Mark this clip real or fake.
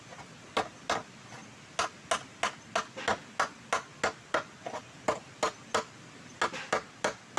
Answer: real